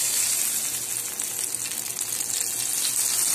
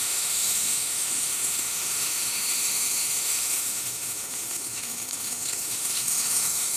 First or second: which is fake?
second